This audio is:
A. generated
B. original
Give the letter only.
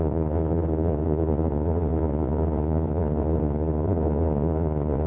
A